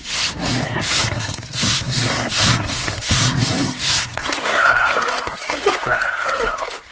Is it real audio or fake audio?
fake